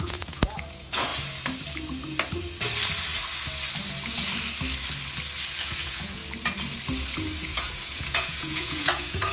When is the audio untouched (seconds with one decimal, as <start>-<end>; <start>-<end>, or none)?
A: 1.1-5.6; 6.2-7.4